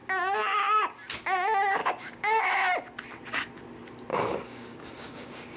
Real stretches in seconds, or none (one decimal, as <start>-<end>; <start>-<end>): 0.0-1.8; 2.4-4.1